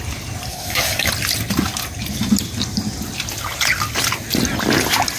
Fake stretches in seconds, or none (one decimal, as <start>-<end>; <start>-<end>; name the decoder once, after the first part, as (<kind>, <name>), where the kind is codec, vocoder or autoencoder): 0.5-1.1 (autoencoder, DAC-VAE)